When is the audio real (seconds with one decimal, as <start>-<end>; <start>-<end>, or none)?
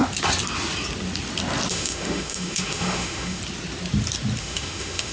0.0-1.7; 3.4-4.4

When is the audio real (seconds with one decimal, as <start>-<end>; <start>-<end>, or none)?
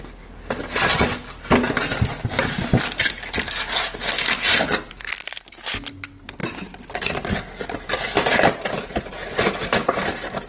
0.0-6.4; 9.0-10.5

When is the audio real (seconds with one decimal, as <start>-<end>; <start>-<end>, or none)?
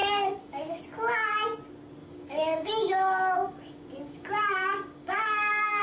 0.8-2.0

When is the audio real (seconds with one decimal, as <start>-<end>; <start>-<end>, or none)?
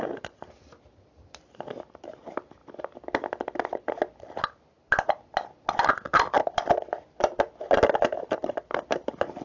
0.0-9.4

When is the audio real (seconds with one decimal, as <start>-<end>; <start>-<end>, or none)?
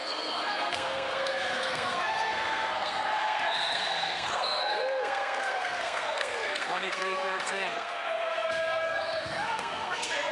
none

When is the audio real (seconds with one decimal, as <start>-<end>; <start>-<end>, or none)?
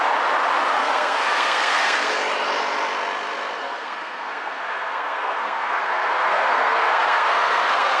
0.0-0.8; 2.1-3.6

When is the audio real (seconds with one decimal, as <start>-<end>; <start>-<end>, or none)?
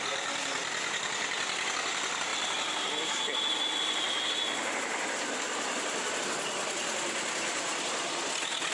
0.0-8.7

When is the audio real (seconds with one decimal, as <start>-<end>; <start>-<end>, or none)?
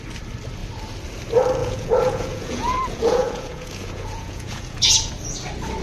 0.0-1.6; 5.1-5.8